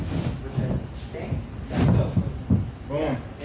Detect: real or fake real